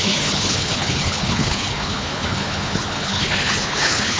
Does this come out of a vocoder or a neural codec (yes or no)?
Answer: yes